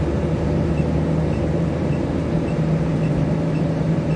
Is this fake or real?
fake